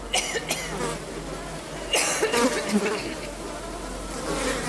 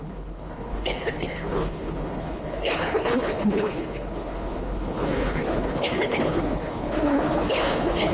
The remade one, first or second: second